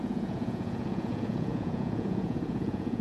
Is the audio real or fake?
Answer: fake